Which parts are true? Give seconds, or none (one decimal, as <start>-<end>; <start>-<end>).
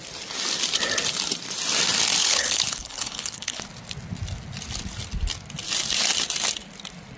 0.0-2.2; 3.6-7.2